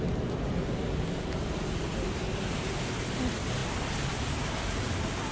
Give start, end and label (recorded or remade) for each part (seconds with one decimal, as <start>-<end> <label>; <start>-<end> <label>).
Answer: 0.0-5.3 recorded